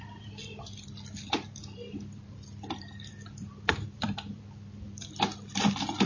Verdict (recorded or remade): remade